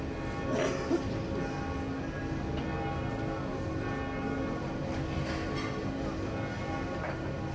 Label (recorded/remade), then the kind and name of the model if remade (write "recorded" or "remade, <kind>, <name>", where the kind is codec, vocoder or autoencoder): recorded